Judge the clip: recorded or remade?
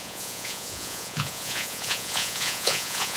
remade